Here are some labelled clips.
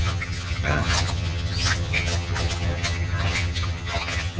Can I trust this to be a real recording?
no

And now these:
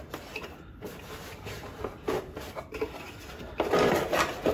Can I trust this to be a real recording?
yes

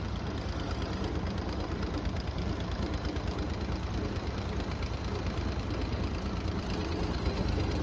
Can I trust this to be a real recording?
yes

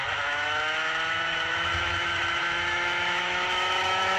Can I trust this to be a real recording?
no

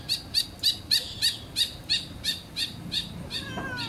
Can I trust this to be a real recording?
yes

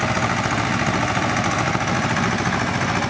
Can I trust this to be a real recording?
yes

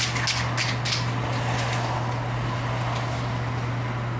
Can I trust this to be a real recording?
yes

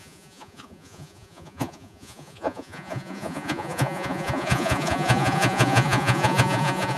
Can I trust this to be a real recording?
no